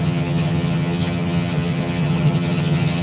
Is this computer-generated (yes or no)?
yes